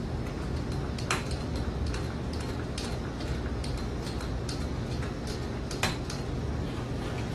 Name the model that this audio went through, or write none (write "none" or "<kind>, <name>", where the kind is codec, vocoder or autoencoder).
none